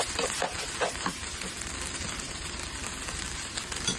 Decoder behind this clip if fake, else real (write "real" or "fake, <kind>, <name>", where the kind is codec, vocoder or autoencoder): real